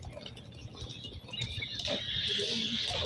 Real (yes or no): yes